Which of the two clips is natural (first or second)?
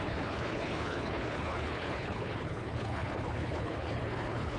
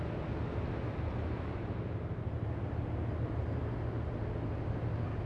second